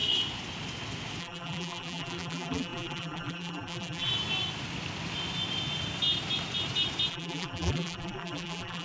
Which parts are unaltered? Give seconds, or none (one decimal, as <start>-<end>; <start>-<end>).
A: 0.0-1.2; 4.1-7.1